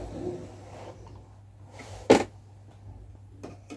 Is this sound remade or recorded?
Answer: recorded